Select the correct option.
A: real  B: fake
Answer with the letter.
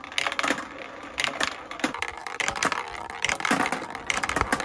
A